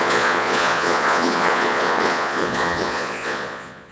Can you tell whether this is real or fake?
fake